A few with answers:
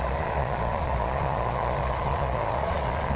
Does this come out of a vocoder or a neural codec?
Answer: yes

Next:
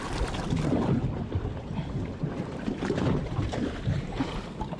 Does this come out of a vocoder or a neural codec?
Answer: yes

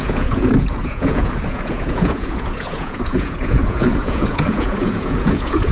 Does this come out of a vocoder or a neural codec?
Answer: yes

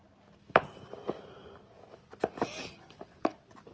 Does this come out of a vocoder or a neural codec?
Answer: no